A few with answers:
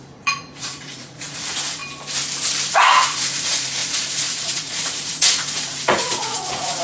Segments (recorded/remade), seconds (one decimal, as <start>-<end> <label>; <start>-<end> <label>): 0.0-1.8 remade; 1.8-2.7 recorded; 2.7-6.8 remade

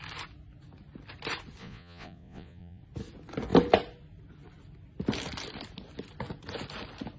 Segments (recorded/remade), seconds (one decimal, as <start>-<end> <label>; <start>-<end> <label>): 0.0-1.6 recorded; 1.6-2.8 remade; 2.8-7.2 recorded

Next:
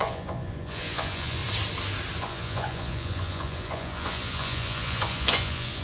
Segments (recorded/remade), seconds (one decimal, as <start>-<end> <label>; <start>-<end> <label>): 0.0-1.4 remade; 1.4-2.2 recorded; 2.2-5.8 remade

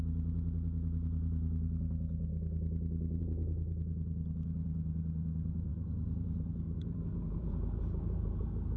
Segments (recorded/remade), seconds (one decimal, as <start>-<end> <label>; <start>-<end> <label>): 0.0-2.3 remade; 2.3-3.2 recorded; 3.2-8.8 remade

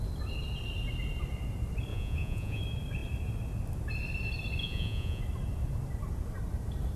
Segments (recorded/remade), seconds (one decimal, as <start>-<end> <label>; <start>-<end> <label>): 0.0-1.9 recorded; 1.9-2.6 remade; 2.6-4.6 recorded; 4.6-5.2 remade; 5.2-7.0 recorded